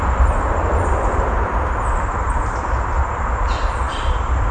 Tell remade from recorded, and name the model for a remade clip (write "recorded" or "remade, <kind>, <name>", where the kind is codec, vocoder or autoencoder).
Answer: recorded